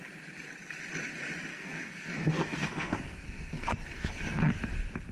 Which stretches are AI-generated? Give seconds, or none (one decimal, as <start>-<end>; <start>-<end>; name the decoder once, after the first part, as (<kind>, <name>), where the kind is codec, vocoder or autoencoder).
1.5-4.6 (codec, SNAC)

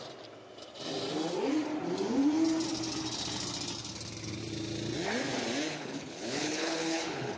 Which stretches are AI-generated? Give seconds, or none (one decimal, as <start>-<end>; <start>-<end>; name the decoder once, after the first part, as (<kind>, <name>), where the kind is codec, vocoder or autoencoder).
5.8-7.4 (codec, HILCodec)

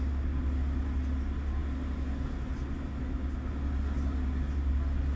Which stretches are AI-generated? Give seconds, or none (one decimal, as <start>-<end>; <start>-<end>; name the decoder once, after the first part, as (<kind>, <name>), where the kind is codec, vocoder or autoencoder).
none

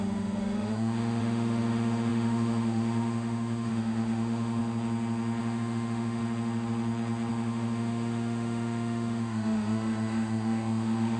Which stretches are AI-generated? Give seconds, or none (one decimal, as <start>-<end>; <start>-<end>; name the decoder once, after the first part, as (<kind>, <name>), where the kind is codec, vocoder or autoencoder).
0.0-4.6 (autoencoder, DAC-VAE); 5.4-6.2; 7.3-11.2